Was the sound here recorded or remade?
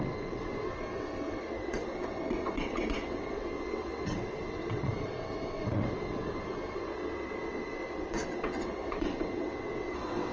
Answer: remade